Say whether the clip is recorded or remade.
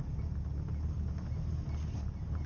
recorded